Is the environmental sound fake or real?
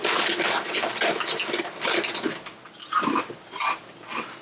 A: real